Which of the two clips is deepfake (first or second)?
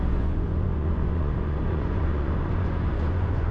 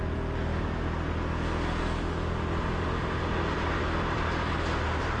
first